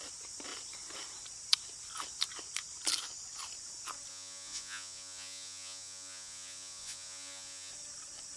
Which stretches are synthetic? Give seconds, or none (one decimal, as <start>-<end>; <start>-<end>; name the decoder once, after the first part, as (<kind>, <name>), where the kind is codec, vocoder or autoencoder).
4.1-7.7 (vocoder, Vocos)